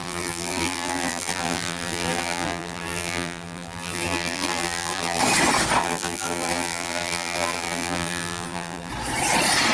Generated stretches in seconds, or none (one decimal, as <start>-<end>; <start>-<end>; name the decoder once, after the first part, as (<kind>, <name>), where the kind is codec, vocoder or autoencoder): 0.0-5.2 (vocoder, BigVGAN v2); 5.8-8.9